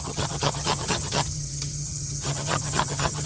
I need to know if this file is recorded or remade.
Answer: remade